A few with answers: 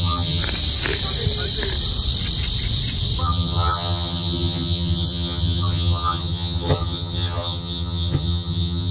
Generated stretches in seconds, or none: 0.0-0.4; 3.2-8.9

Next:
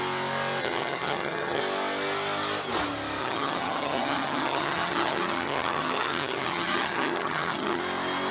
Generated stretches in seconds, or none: 0.6-1.6; 3.2-7.8

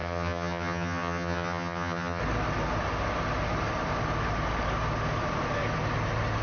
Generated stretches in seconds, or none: 0.0-2.2

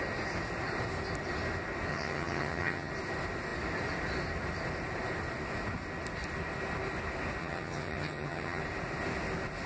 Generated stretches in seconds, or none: 1.9-2.9; 7.4-8.6

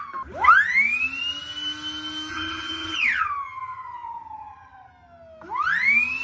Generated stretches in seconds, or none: 2.3-4.9

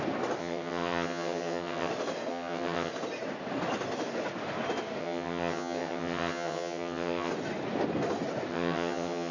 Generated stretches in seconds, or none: 0.4-1.9; 2.3-2.9; 5.0-7.3; 8.5-9.3

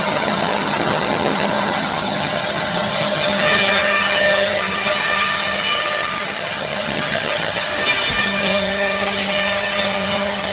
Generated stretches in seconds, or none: 0.0-7.7; 8.2-10.5